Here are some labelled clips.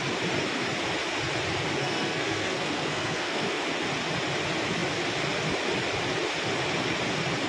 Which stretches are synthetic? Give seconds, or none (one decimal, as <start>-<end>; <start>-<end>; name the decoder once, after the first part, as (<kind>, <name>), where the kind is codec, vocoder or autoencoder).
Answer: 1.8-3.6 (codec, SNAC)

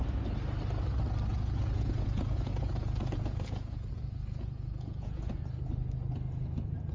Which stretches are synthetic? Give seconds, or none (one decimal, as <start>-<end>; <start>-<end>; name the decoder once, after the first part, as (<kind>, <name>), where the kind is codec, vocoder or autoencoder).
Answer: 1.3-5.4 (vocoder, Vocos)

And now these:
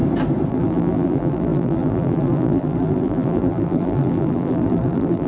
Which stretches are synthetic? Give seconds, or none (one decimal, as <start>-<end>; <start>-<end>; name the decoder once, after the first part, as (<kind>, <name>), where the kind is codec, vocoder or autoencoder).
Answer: 0.5-5.3 (vocoder, BigVGAN v2)

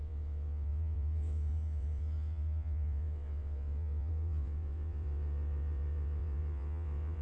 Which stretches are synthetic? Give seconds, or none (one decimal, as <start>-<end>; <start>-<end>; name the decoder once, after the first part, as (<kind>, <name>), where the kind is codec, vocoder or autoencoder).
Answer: 0.0-7.2 (vocoder, WaveNeXt)